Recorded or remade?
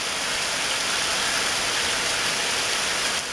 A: recorded